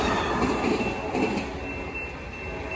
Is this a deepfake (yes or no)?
no